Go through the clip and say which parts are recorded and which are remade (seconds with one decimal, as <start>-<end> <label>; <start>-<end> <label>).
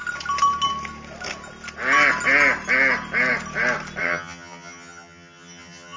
0.0-4.0 recorded; 4.0-6.0 remade